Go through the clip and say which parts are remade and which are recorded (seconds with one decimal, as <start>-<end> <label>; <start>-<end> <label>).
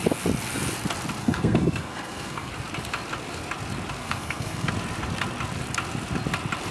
0.0-1.2 recorded; 1.2-2.5 remade; 2.5-4.0 recorded; 4.0-4.7 remade; 4.7-6.7 recorded